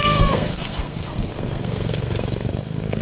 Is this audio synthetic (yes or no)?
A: yes